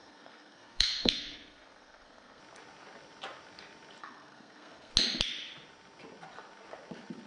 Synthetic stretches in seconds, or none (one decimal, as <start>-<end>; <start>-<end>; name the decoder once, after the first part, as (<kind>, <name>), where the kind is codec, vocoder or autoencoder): 0.0-2.4 (codec, SNAC); 4.0-4.9